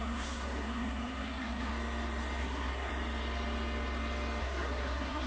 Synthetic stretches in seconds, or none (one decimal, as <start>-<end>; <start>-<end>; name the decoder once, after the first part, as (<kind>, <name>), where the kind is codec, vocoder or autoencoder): 0.0-1.7 (codec, SNAC); 2.4-2.9; 4.4-5.3